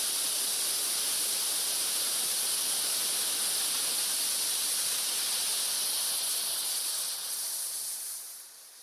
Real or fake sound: real